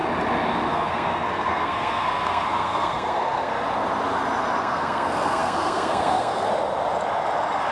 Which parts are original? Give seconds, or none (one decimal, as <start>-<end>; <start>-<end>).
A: 0.0-0.7; 3.5-4.6; 6.5-7.7